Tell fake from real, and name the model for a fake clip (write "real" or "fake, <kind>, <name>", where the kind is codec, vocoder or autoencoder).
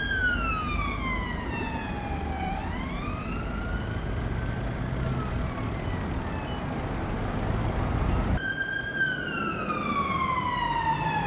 real